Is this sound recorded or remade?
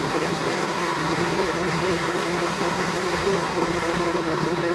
remade